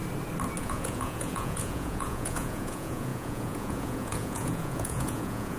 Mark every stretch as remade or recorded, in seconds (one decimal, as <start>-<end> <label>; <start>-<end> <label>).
0.0-0.6 recorded; 0.6-5.6 remade